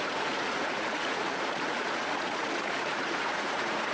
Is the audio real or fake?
fake